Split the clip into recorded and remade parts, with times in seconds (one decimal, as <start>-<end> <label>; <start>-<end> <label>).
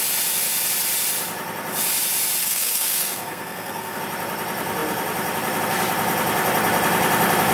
0.0-2.4 recorded; 2.4-4.0 remade; 4.0-7.5 recorded